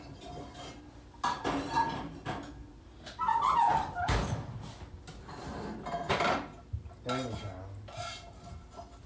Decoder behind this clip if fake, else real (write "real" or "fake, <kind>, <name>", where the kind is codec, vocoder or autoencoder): real